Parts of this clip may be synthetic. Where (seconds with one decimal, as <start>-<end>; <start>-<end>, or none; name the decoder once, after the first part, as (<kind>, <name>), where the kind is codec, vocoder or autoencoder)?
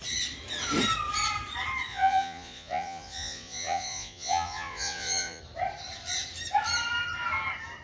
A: 1.9-5.4 (vocoder, Vocos)